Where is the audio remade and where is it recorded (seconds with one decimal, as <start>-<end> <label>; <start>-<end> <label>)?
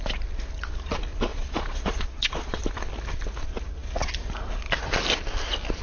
0.0-1.3 recorded; 1.3-2.6 remade; 2.6-5.8 recorded